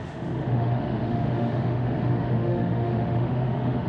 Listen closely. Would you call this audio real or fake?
fake